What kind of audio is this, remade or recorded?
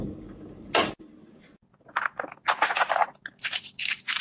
recorded